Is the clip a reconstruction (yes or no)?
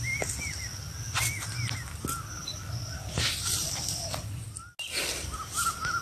no